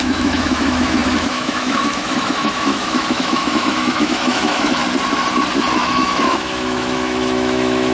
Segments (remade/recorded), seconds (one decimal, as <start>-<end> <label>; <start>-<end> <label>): 0.0-4.8 remade; 4.8-5.7 recorded; 5.7-7.9 remade